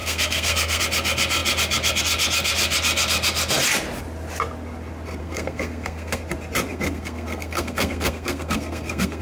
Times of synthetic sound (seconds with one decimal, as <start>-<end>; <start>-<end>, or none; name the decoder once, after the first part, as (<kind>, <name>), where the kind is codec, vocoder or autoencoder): 0.0-0.8 (codec, SNAC); 5.2-6.2; 6.7-9.2